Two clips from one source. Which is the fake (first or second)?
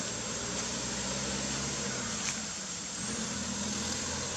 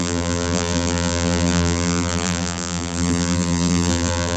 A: second